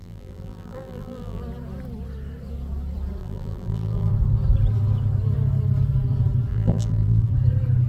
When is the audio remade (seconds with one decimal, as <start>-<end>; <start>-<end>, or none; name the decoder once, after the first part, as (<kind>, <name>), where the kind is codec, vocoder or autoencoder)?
0.0-1.4 (vocoder, BigVGAN v2); 3.2-4.1; 6.5-7.3